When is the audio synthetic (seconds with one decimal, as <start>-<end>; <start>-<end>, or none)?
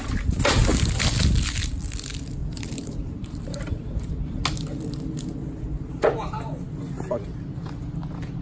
2.4-4.4